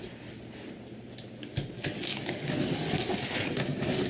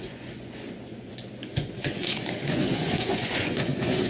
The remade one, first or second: second